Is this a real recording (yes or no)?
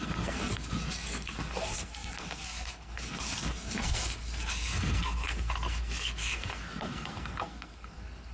no